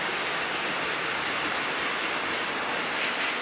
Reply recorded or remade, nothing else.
recorded